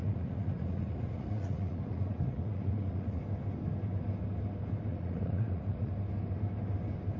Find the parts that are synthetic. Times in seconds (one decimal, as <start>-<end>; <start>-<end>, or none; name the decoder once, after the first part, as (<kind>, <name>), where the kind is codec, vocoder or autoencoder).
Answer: 0.0-3.2 (vocoder, Vocos); 4.9-5.9